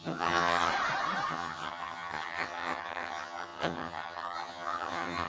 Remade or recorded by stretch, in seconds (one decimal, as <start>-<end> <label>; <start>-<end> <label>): 0.0-0.7 remade; 0.7-1.3 recorded; 1.3-5.3 remade